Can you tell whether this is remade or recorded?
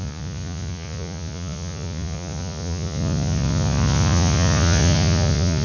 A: remade